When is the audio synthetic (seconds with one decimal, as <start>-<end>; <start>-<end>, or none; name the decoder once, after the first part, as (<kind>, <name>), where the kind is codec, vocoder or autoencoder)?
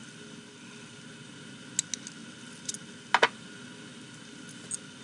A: none